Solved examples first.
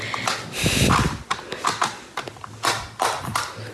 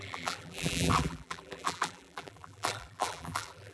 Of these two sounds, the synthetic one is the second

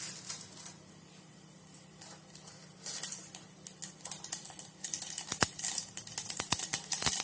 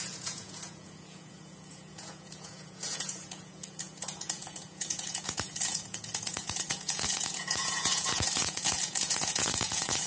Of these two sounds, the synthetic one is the second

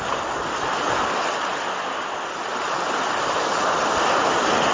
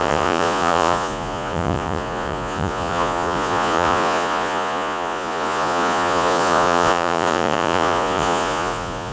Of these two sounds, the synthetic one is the second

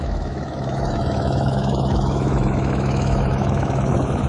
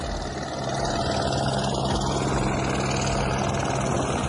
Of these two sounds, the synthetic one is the first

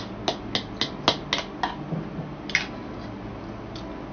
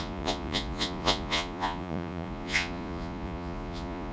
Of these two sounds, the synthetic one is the second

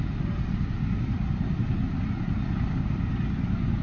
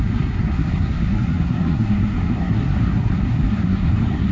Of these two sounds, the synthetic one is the second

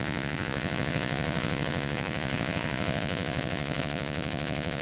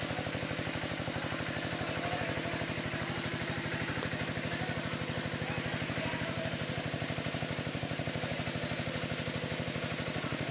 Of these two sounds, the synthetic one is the first